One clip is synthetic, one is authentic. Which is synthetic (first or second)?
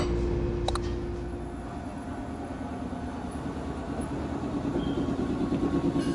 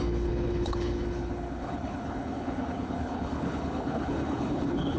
second